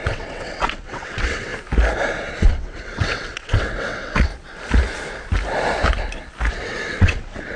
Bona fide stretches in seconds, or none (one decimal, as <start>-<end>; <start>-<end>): 1.5-2.5; 4.3-6.5